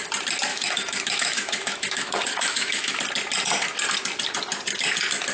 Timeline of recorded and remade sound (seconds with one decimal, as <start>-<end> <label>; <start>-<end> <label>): 0.0-0.5 recorded; 0.5-3.0 remade; 3.0-5.3 recorded